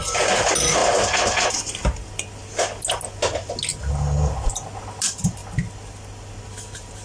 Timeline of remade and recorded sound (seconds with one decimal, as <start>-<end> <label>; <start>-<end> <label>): 0.0-7.0 recorded